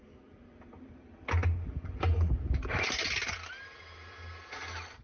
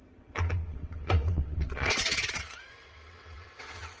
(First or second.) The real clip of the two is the first